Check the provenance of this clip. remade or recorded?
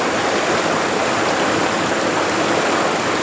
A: recorded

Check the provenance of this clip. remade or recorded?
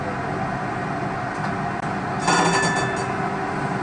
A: recorded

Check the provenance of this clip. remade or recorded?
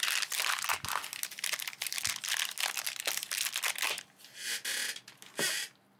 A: recorded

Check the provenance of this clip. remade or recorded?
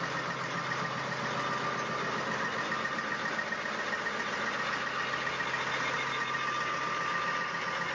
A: recorded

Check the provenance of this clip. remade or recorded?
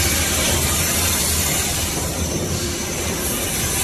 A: recorded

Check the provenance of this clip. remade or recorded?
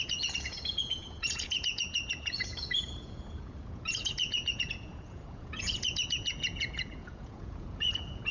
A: remade